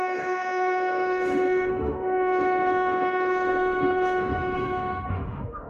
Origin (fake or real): fake